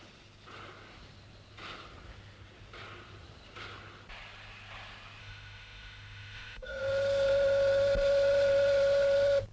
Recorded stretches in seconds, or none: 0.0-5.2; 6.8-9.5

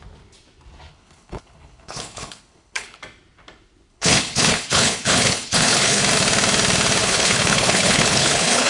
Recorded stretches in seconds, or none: 0.0-0.9; 3.0-3.9; 6.0-7.0